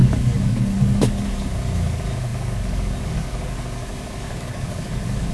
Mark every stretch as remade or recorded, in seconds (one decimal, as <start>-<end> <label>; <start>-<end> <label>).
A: 0.0-5.3 remade